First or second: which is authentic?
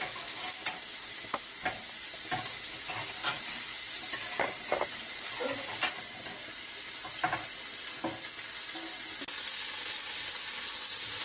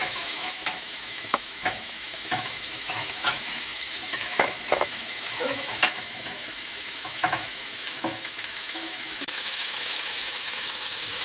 first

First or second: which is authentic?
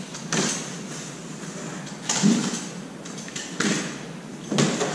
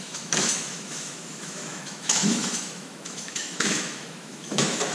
first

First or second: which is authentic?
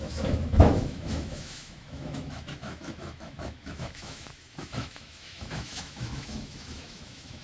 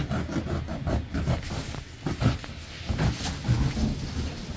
second